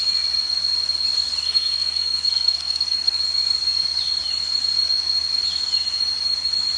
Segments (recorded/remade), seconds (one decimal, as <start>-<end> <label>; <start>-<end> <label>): 0.0-1.4 recorded; 1.4-3.2 remade; 3.2-6.8 recorded